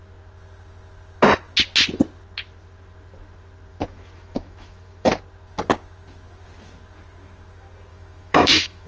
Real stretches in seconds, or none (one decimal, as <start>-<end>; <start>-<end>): 0.0-3.7; 5.2-7.9